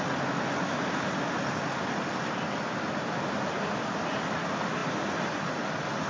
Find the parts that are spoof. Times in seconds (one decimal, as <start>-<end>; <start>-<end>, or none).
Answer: none